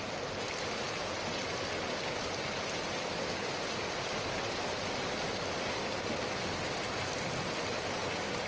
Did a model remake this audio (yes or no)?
no